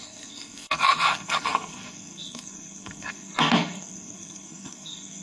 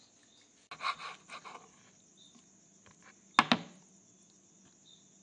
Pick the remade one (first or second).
first